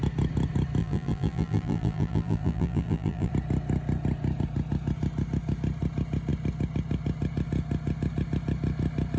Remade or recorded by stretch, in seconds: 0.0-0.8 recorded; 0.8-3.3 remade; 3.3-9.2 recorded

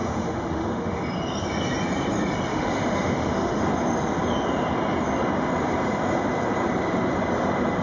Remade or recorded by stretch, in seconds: 0.0-1.0 remade; 1.0-2.5 recorded; 2.5-3.6 remade; 3.6-7.8 recorded

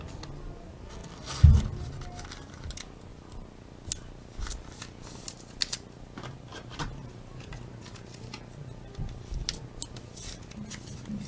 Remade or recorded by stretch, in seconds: 0.0-11.3 recorded

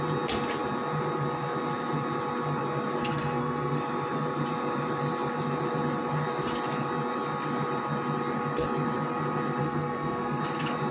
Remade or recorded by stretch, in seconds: 0.0-3.0 recorded; 3.0-3.8 remade; 3.8-9.6 recorded; 9.6-10.4 remade; 10.4-10.9 recorded

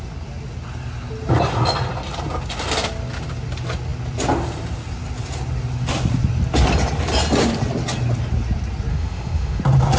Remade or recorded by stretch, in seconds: 0.0-8.9 recorded; 8.9-9.6 remade; 9.6-10.0 recorded